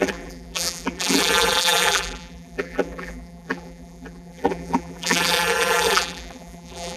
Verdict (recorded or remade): remade